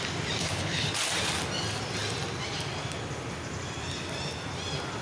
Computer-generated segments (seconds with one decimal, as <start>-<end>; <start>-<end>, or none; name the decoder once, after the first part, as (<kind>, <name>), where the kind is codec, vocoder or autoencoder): 0.4-0.9 (codec, HILCodec)